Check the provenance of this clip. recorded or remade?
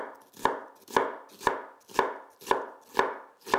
recorded